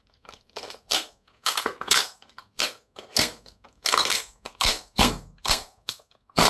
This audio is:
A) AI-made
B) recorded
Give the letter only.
A